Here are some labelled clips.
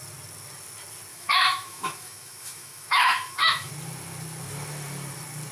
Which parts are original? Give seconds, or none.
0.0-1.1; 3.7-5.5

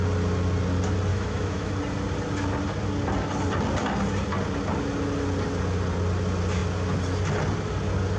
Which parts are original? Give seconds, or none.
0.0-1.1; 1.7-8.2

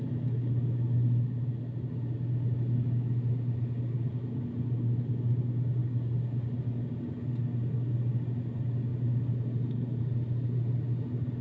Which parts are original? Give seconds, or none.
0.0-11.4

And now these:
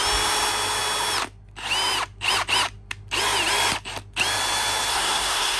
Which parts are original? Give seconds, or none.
0.0-4.9